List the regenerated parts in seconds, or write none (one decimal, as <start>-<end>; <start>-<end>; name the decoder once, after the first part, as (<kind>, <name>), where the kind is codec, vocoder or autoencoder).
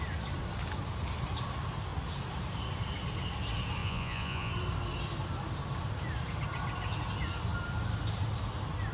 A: 3.8-4.5 (vocoder, Vocos)